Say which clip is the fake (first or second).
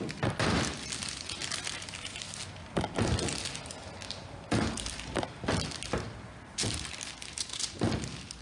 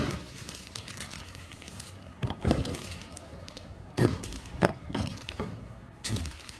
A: second